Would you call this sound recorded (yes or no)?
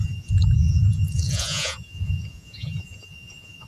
no